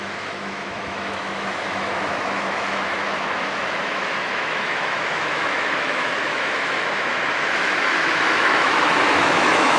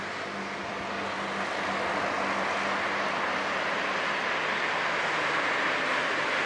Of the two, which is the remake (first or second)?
first